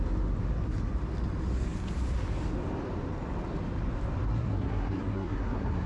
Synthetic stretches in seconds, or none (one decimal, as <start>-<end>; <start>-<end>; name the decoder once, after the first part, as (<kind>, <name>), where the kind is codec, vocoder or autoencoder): 4.3-5.9 (codec, SNAC)